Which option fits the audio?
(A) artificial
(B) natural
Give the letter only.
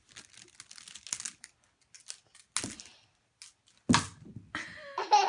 B